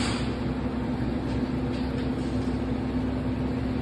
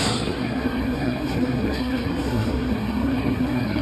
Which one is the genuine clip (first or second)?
first